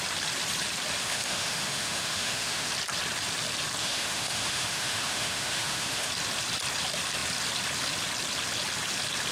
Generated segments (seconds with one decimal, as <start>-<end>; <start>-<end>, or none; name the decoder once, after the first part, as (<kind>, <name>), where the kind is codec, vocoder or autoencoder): 1.0-2.7 (autoencoder, DAC-VAE); 3.8-6.1